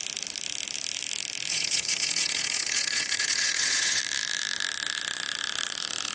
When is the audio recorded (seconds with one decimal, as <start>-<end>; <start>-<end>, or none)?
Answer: 0.0-1.5; 4.0-6.1